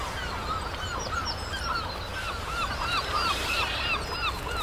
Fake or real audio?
real